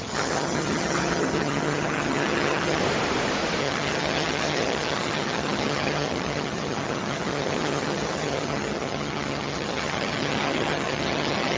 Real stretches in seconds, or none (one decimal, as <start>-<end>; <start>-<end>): 2.8-3.6

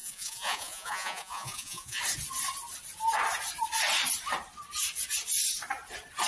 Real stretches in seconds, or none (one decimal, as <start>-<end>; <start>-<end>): 2.0-6.3

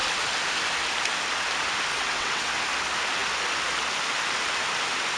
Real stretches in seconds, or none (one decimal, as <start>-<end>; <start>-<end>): 0.0-1.9; 2.5-5.2

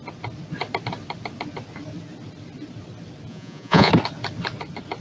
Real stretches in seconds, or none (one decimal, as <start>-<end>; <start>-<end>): 0.0-3.3; 3.9-5.0

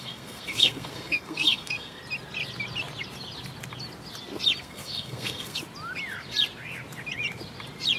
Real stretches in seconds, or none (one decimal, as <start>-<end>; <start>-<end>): 2.0-4.6; 5.6-8.0